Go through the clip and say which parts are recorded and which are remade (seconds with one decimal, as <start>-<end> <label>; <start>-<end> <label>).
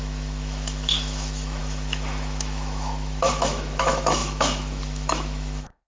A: 0.0-5.9 remade